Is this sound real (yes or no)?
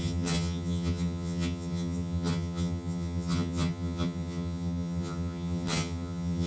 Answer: no